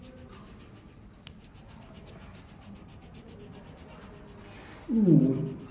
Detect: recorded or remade recorded